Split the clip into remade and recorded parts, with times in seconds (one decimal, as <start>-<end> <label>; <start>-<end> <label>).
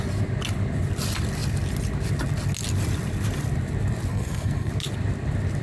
0.0-4.1 recorded; 4.1-4.7 remade; 4.7-5.6 recorded